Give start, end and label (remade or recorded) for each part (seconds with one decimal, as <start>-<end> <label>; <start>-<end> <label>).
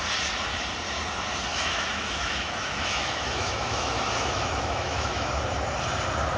0.0-1.5 recorded; 1.5-5.3 remade; 5.3-6.4 recorded